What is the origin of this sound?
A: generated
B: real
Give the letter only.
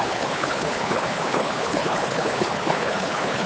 A